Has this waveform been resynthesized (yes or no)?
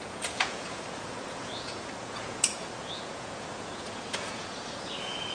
yes